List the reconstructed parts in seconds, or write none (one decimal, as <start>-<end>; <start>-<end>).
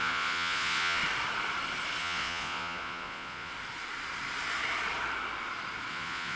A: 0.0-1.0; 2.0-3.5; 5.9-6.4